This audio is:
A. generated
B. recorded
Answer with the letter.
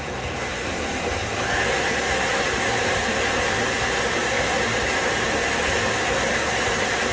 A